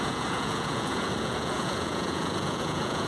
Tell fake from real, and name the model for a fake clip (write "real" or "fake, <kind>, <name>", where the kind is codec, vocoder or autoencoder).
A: fake, vocoder, Vocos